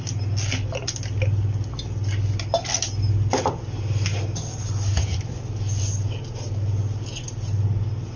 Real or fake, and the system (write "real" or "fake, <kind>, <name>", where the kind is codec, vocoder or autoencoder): real